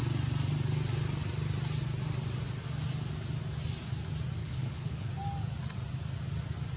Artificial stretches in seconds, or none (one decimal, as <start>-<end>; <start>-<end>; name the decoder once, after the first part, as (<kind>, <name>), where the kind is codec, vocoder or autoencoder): 4.4-5.1 (codec, HILCodec)